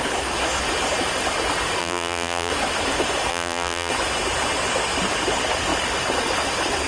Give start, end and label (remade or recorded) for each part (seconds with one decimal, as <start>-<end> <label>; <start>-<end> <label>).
0.0-1.8 recorded; 1.8-2.5 remade; 2.5-3.3 recorded; 3.3-3.9 remade; 3.9-6.9 recorded